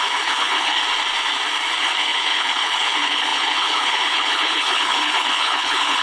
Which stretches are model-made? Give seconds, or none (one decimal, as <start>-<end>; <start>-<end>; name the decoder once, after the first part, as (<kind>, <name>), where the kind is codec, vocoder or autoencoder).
0.0-0.8 (codec, HILCodec); 1.7-6.0